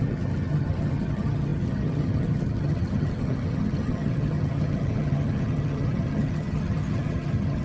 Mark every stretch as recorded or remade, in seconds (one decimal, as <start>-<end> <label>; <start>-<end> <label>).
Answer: 0.0-7.6 remade